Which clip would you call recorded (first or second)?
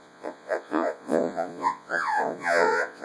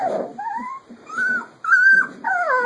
second